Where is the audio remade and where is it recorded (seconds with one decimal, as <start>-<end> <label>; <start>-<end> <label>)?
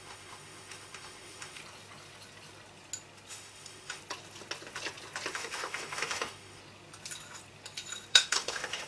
0.0-1.6 remade; 1.6-3.3 recorded; 3.3-4.0 remade; 4.0-5.3 recorded; 5.3-6.6 remade; 6.6-8.1 recorded; 8.1-8.9 remade